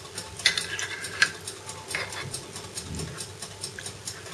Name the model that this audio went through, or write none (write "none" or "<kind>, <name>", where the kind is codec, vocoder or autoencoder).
none